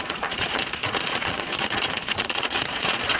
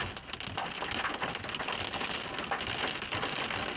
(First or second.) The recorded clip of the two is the second